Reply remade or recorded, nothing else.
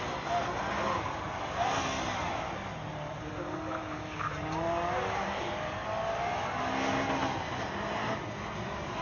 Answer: recorded